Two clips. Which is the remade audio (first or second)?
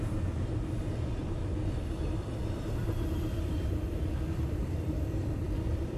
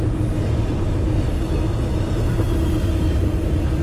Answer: first